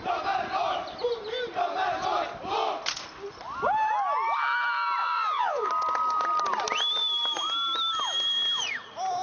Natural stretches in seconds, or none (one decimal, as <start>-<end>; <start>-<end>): 0.0-5.0; 5.7-9.2